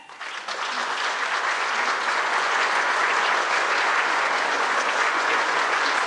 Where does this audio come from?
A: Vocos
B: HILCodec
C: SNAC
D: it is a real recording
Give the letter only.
A